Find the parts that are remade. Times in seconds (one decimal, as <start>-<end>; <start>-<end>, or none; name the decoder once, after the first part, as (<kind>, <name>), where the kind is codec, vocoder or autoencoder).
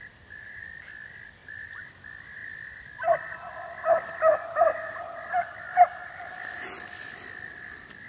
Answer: none